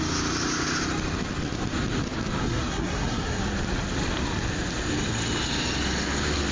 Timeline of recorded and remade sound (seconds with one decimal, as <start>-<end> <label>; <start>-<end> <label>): 0.0-2.4 recorded; 2.4-3.4 remade; 3.4-6.5 recorded